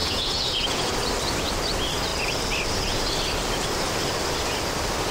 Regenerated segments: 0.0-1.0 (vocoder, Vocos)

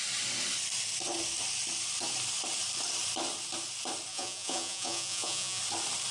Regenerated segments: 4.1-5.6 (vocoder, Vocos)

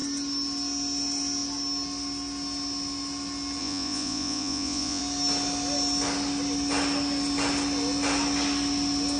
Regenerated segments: 3.6-5.0 (vocoder, Vocos)